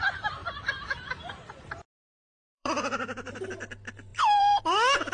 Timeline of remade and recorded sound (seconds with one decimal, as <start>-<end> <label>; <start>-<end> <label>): 0.0-0.4 recorded; 0.4-3.5 remade; 3.5-4.1 recorded; 4.1-4.6 remade; 4.6-5.1 recorded